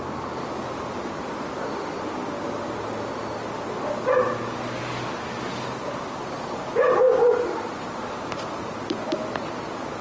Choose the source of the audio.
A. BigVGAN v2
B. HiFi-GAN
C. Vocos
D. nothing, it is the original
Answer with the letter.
D